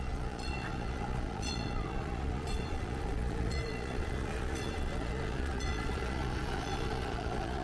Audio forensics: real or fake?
fake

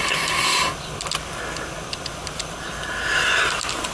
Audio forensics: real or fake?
real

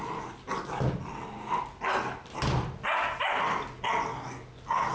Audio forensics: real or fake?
real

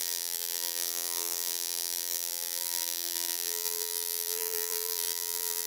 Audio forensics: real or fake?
fake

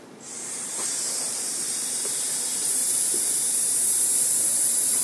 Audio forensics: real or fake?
fake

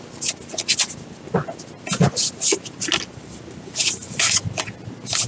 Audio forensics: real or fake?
real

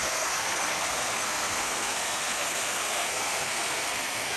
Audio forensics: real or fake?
fake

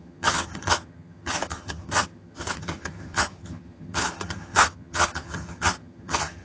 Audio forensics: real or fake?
fake